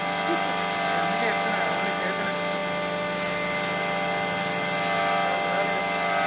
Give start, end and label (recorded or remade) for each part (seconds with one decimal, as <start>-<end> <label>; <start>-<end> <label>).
0.0-6.3 recorded